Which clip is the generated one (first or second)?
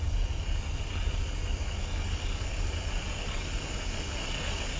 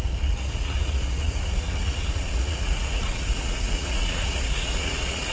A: second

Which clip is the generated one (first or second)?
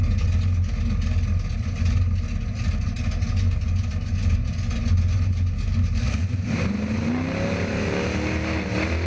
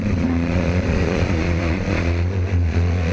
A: second